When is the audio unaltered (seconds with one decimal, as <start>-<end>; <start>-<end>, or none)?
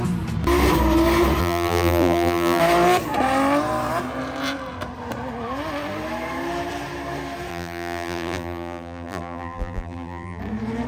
0.0-1.4; 2.6-7.5; 10.4-10.9